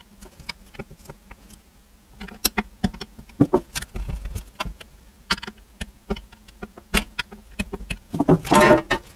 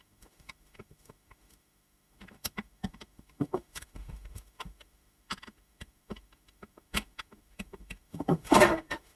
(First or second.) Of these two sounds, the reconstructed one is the second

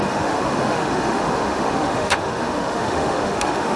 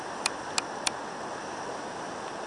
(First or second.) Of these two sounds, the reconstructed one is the first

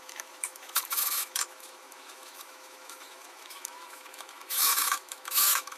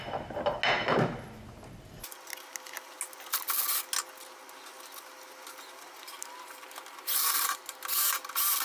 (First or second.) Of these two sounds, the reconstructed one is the first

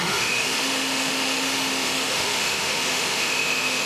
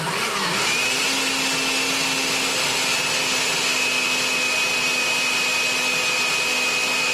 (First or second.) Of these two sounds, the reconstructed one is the first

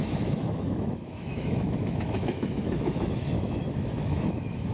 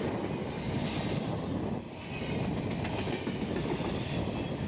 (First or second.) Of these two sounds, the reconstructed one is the first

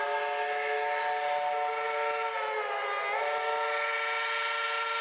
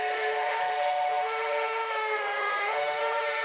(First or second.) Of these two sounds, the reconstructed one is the second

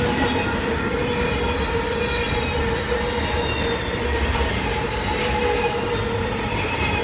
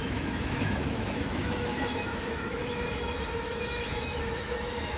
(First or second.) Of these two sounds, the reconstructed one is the second